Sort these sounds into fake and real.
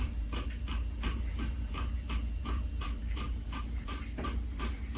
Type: fake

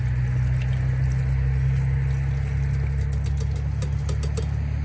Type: real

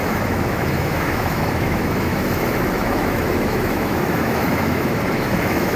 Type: fake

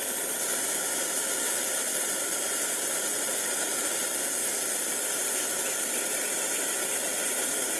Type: real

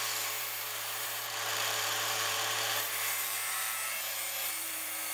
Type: fake